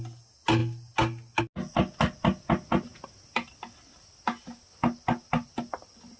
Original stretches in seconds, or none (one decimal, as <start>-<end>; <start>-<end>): 0.0-6.2